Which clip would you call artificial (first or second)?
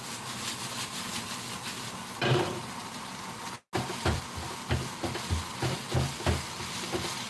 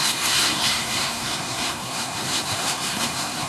second